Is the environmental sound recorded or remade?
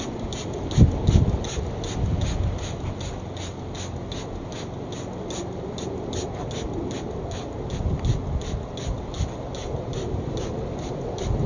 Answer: recorded